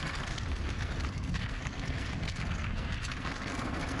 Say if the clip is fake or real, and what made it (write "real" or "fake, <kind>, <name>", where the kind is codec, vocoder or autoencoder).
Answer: fake, codec, SNAC